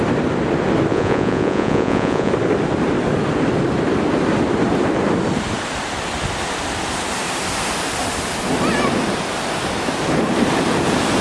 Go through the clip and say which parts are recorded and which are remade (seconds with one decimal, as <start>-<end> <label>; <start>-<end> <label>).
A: 0.0-0.9 recorded; 0.9-2.3 remade; 2.3-11.2 recorded